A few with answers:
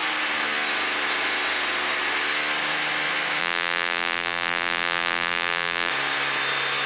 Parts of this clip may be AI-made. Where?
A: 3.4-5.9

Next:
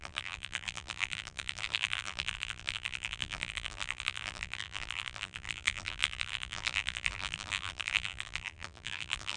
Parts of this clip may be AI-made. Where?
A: 0.0-9.4

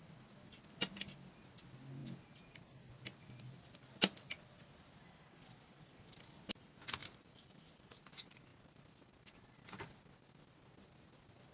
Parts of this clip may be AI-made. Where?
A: 7.0-8.1

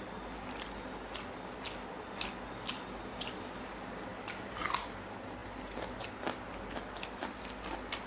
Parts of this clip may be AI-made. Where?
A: 4.1-4.7

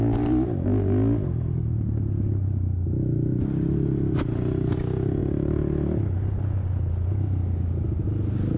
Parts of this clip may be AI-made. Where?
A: none